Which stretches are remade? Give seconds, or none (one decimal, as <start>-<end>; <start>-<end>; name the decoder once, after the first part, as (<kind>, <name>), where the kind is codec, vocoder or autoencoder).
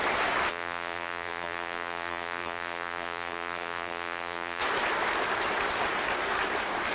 0.5-4.6 (vocoder, BigVGAN v2)